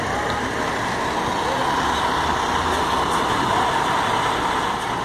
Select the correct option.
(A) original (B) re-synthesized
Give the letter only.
A